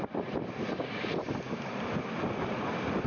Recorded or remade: recorded